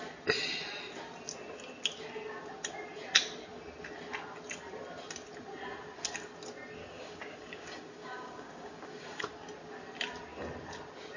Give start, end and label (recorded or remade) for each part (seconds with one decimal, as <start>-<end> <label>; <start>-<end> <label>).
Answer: 0.0-6.8 recorded; 6.8-9.2 remade; 9.2-11.2 recorded